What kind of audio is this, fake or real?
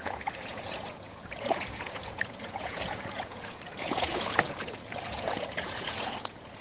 fake